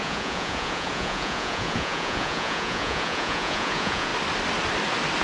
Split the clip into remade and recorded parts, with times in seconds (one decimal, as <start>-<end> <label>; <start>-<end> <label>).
0.0-4.1 remade; 4.1-5.2 recorded